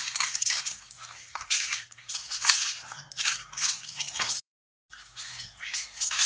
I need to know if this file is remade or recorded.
remade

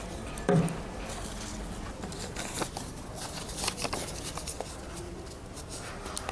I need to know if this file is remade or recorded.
recorded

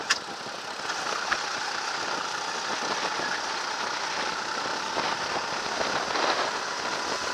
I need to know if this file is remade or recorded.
recorded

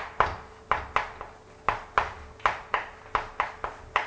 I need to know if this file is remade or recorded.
recorded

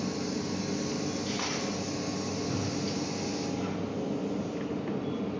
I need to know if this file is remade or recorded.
recorded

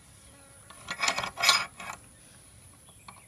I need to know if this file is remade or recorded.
recorded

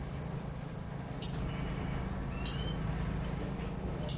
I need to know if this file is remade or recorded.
recorded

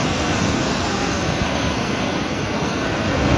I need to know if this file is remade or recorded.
remade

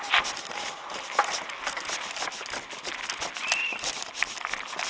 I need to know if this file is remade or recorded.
recorded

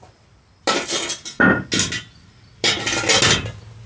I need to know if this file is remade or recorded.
recorded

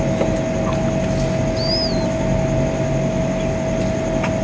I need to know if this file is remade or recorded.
recorded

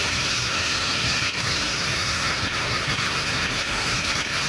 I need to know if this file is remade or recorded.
remade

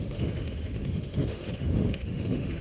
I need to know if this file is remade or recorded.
remade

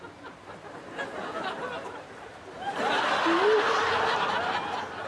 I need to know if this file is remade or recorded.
recorded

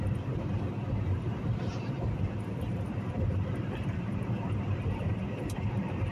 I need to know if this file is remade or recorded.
remade